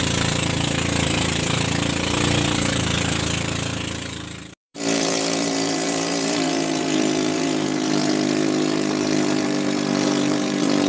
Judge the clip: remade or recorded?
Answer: remade